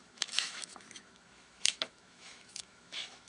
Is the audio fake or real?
fake